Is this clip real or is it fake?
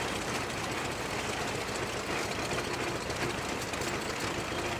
real